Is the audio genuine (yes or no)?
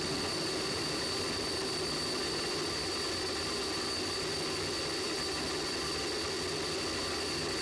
yes